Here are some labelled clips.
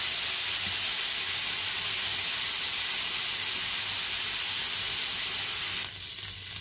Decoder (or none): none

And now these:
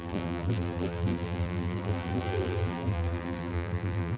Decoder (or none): vocoder, BigVGAN v2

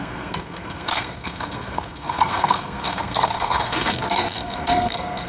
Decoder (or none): codec, SNAC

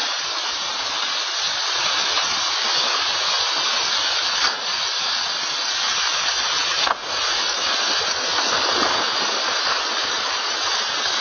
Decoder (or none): none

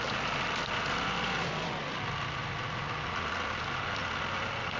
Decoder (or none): none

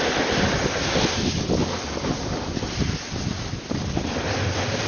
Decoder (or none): none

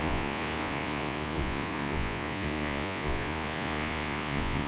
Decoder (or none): vocoder, Vocos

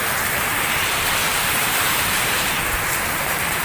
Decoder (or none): vocoder, BigVGAN v2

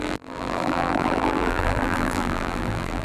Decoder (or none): vocoder, BigVGAN v2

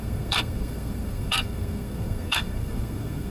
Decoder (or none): codec, SNAC